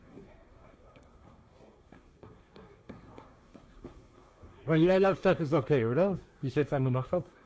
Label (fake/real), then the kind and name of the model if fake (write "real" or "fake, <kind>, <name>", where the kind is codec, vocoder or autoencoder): fake, codec, SNAC